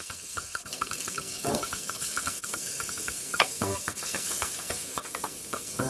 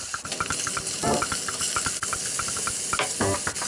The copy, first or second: first